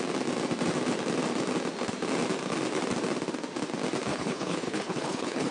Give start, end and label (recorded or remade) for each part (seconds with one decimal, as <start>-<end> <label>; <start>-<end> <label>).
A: 0.0-4.1 recorded; 4.1-5.5 remade